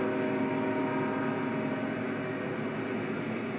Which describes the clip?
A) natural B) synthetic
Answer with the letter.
A